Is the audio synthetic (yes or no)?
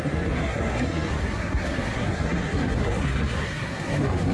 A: yes